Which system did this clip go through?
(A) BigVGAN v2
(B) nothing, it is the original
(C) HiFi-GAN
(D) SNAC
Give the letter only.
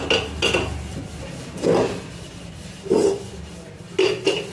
B